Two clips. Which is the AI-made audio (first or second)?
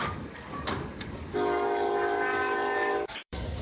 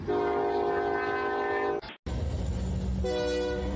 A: first